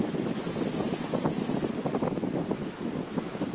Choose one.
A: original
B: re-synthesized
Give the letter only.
A